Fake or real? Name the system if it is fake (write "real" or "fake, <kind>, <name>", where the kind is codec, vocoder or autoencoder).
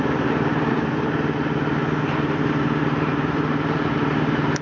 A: fake, vocoder, BigVGAN v2